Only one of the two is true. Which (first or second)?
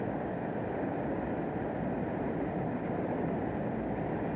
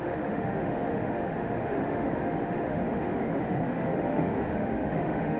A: first